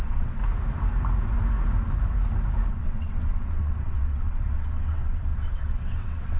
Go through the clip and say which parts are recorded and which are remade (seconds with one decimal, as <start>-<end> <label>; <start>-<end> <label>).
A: 0.0-0.4 remade; 0.4-2.7 recorded; 2.7-6.4 remade